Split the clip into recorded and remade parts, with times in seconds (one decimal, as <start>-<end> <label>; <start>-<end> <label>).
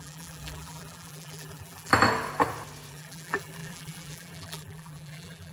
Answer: 0.0-1.9 remade; 1.9-2.9 recorded; 2.9-5.5 remade